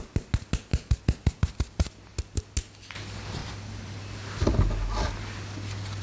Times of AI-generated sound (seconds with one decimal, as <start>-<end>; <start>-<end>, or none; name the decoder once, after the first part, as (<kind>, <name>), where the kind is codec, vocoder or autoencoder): 3.4-4.0 (vocoder, BigVGAN v2)